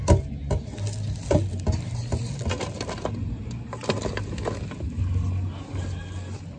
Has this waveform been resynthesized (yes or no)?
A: no